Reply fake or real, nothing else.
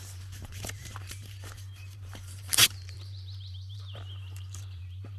fake